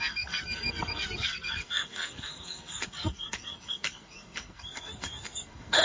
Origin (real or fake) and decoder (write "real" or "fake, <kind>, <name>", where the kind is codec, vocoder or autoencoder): fake, codec, SNAC